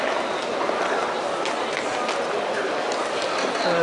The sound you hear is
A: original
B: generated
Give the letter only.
A